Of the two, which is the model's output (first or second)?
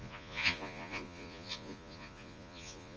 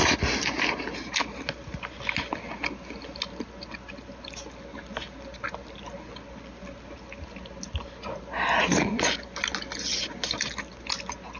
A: first